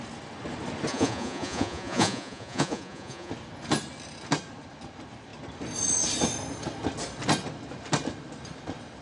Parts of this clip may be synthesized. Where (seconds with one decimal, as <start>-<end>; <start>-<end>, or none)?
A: 0.9-3.3